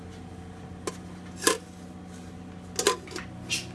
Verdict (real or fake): real